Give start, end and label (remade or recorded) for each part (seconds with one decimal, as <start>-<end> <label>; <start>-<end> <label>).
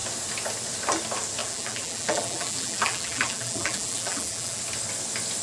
0.0-1.4 recorded; 1.4-4.6 remade; 4.6-5.4 recorded